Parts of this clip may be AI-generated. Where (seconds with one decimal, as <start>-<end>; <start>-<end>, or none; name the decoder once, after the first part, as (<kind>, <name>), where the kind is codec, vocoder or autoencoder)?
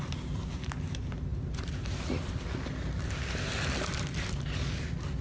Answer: 1.3-4.2 (vocoder, BigVGAN v2)